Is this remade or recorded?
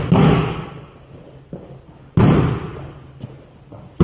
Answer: recorded